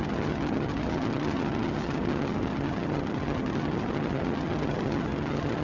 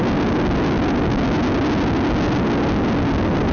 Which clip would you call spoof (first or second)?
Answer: first